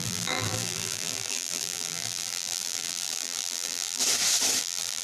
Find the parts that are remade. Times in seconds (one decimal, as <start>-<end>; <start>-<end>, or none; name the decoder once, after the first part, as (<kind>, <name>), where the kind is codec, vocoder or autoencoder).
0.0-4.0 (vocoder, BigVGAN v2); 4.6-5.0